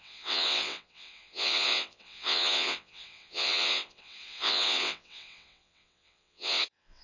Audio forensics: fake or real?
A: fake